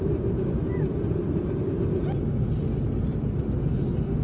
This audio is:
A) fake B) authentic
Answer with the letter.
B